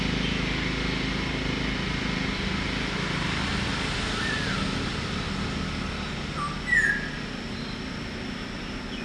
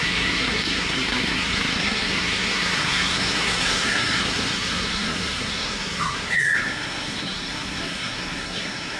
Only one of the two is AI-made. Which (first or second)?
second